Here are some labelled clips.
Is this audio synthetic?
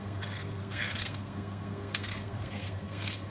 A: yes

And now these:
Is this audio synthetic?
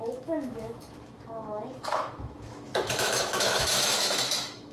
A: yes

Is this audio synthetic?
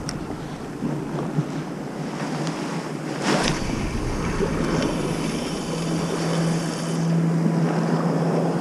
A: no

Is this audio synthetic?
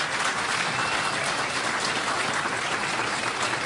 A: no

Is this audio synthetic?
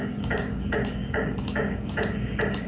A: yes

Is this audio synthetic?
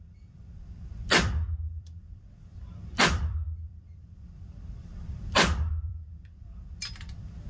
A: yes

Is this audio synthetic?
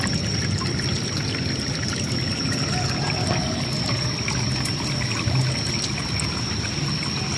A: no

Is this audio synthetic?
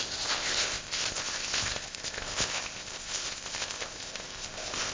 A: yes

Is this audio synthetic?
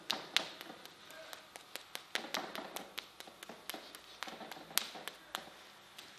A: no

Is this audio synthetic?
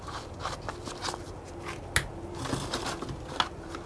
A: no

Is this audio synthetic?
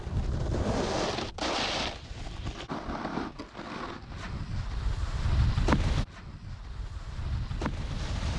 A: no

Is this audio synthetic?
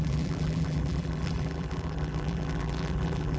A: yes